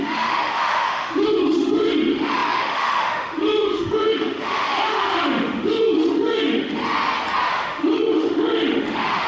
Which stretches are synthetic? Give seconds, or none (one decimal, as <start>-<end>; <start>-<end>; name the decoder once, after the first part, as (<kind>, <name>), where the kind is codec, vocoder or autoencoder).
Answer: 0.0-6.8 (autoencoder, DAC-VAE); 7.5-9.3